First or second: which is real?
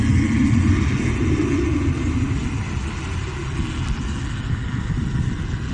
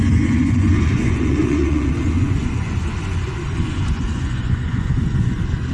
first